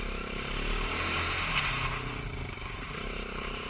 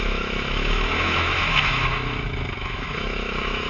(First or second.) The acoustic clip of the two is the first